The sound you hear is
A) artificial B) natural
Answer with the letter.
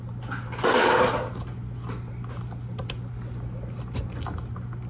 B